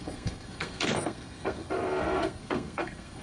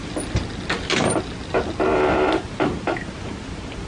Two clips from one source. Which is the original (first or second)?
second